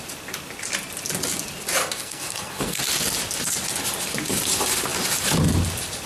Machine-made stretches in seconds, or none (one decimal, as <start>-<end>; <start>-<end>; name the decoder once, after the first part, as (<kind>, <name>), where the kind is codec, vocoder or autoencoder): 1.8-2.8 (codec, SNAC)